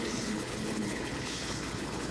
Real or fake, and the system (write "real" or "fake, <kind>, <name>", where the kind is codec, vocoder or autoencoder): fake, codec, HILCodec